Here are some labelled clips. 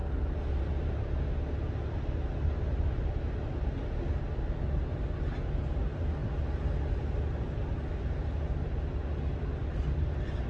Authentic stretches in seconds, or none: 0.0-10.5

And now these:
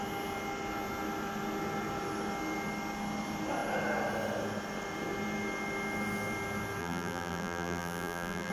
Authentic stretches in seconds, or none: 0.0-6.8

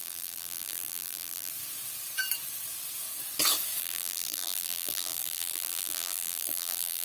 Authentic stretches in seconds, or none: 1.5-3.8

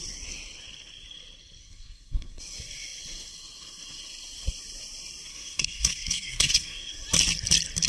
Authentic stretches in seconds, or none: 0.0-1.6; 2.4-5.3; 6.9-7.9

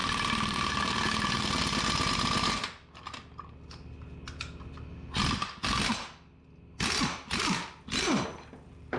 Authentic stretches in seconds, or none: 0.0-9.0